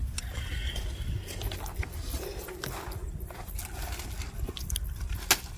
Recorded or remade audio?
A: recorded